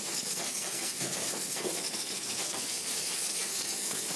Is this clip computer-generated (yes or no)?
yes